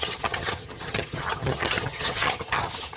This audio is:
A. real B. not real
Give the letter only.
B